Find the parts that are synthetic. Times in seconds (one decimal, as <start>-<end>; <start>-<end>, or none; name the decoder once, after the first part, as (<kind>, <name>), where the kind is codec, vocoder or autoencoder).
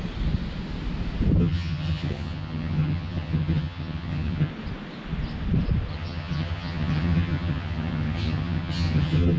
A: 1.4-4.5 (vocoder, HiFi-GAN); 5.9-9.4